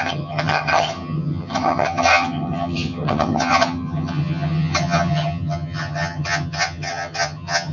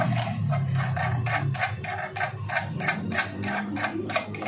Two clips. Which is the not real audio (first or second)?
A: first